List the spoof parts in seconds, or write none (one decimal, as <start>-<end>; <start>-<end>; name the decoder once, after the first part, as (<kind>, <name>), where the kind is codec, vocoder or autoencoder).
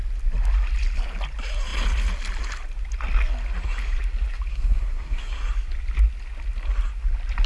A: 4.5-5.3 (codec, SNAC)